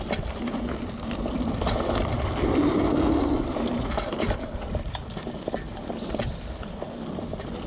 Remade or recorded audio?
recorded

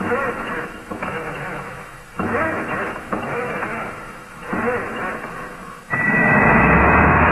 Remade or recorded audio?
remade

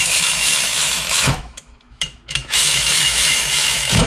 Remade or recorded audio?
remade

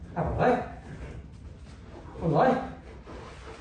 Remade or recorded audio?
recorded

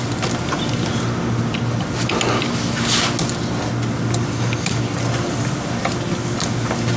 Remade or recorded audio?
recorded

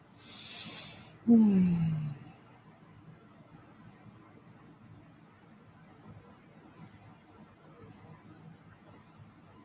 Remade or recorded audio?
recorded